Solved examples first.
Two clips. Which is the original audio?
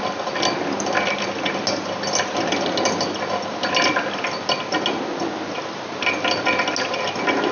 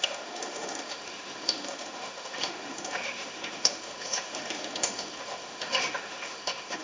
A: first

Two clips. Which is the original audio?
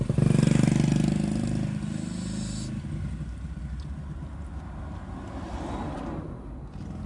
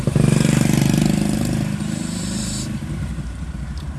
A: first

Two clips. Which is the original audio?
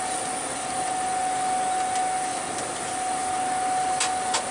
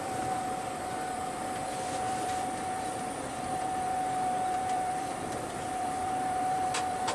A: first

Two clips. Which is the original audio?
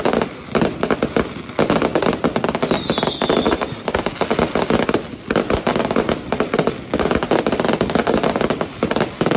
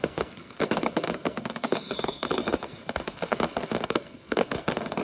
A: first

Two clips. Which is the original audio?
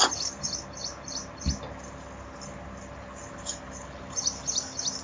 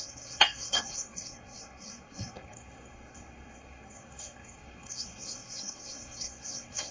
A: first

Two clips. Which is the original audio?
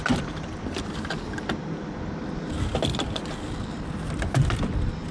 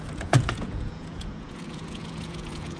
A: first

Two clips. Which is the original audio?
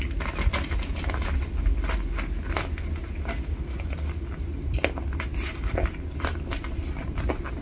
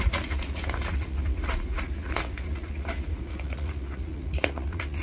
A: first